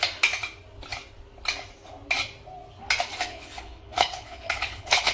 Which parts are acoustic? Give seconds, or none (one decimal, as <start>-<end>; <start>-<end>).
0.0-3.3